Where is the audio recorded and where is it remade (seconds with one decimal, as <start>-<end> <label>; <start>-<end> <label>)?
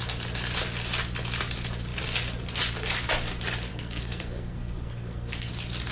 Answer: 0.0-3.7 recorded; 3.7-5.5 remade; 5.5-5.9 recorded